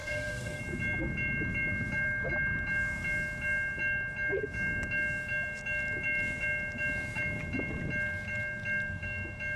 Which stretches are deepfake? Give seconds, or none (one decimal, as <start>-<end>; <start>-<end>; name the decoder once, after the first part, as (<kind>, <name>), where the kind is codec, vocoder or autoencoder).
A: 0.0-0.6 (codec, SNAC)